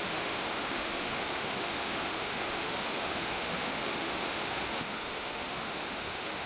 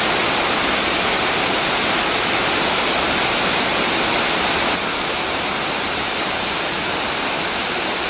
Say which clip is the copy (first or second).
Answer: first